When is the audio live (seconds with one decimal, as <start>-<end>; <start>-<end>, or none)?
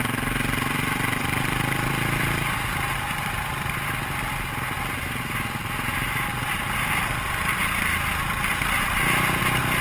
0.0-9.8